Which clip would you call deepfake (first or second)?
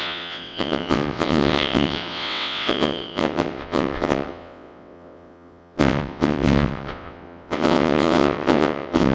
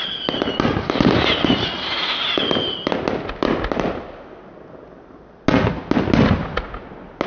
first